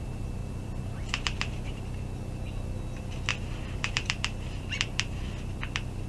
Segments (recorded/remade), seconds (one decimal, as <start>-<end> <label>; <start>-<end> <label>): 0.0-0.4 recorded; 0.4-1.8 remade; 1.8-3.3 recorded; 3.3-6.1 remade